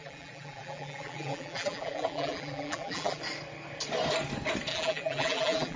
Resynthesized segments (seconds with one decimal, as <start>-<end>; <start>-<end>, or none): 0.0-3.2; 4.7-5.8